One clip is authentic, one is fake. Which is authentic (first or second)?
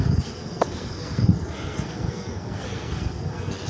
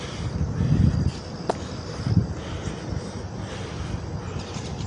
second